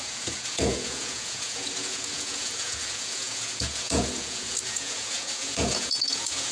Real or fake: fake